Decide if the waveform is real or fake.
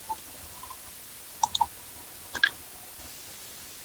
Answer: real